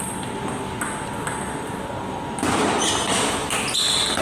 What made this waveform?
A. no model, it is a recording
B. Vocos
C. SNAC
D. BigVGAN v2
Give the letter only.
A